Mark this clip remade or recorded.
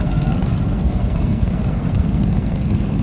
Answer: remade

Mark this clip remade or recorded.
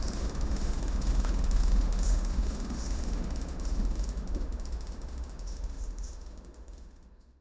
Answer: remade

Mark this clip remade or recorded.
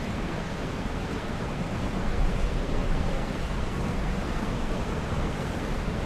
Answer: remade